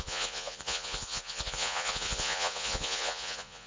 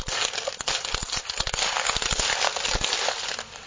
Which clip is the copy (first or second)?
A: first